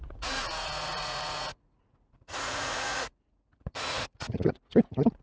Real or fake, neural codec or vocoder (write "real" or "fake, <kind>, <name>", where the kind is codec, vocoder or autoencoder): fake, vocoder, Vocos